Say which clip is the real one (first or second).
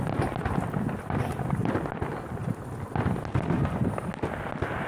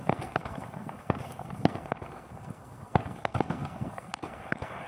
first